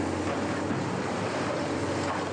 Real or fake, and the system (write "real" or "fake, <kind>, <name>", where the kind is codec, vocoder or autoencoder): real